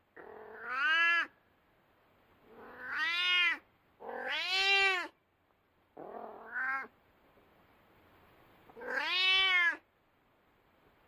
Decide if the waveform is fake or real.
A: real